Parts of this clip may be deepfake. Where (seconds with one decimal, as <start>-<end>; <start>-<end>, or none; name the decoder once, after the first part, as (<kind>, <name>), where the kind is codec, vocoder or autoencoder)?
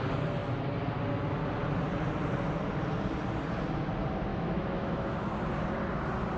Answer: 4.3-5.3 (autoencoder, DAC-VAE)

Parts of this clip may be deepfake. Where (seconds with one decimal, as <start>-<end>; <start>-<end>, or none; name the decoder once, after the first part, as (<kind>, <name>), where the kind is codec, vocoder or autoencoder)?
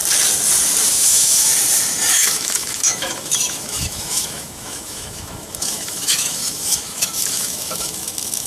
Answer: 0.9-1.5 (autoencoder, DAC-VAE); 2.1-8.5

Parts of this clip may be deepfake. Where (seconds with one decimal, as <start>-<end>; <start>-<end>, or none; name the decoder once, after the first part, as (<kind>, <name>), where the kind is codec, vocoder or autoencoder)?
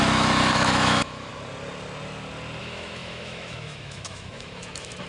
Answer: 0.0-1.3 (autoencoder, DAC-VAE); 2.6-5.1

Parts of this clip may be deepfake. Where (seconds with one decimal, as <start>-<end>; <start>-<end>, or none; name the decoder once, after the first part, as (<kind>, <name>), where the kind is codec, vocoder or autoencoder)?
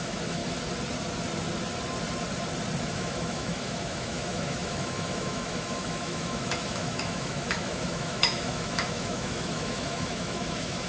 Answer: 0.0-0.4 (autoencoder, DAC-VAE); 2.8-10.9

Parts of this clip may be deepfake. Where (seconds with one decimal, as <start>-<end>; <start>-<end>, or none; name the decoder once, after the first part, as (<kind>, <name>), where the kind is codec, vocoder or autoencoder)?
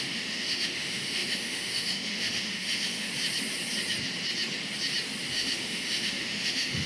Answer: 0.0-3.1 (autoencoder, DAC-VAE); 5.3-6.9